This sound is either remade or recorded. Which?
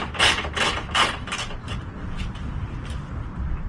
recorded